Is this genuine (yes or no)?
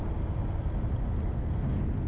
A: yes